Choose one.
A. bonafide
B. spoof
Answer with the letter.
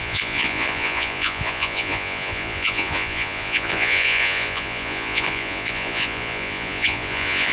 B